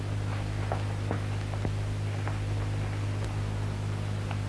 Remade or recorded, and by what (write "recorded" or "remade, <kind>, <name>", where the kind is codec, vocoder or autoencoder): recorded